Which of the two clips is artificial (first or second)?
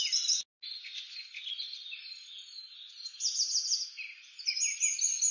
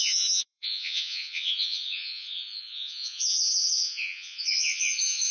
second